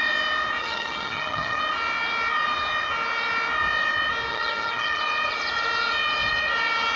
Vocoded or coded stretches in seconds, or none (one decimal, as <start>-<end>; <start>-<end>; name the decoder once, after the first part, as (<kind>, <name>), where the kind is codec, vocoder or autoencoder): 0.6-1.6 (vocoder, HiFi-GAN); 4.3-5.0